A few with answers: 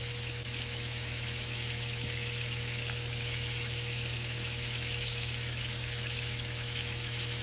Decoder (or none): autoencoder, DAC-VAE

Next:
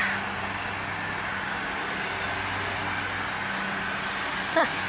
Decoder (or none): none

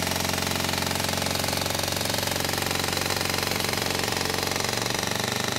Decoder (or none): none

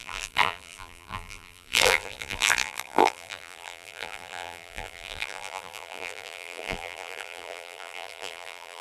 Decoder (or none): vocoder, BigVGAN v2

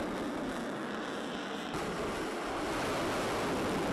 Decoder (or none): none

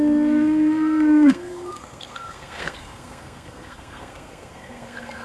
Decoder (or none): codec, SNAC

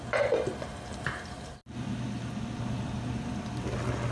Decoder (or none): none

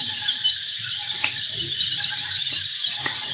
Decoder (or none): vocoder, BigVGAN v2